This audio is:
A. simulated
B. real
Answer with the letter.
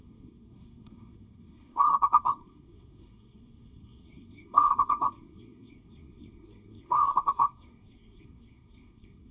A